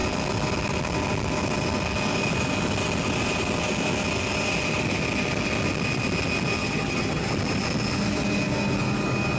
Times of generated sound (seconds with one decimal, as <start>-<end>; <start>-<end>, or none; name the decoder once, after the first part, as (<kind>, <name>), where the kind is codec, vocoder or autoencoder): 6.6-7.3 (vocoder, HiFi-GAN)